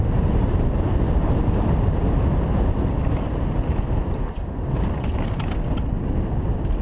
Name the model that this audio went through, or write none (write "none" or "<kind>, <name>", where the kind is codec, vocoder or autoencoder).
none